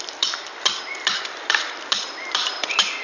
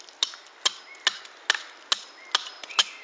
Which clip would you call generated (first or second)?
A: first